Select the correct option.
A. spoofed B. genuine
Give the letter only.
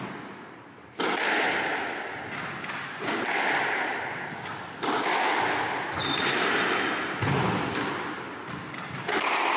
B